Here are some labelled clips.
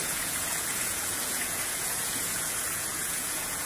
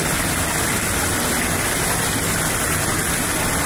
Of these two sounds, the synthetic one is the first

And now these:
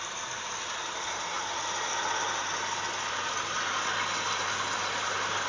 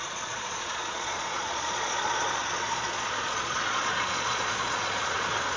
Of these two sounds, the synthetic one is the second